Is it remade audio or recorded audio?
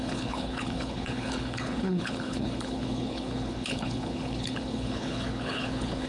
remade